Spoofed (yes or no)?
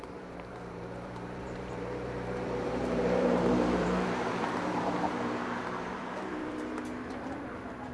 yes